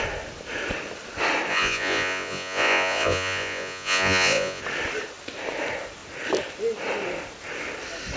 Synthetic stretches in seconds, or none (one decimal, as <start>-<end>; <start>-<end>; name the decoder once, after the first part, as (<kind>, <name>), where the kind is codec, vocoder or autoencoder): 1.5-4.6 (vocoder, Vocos)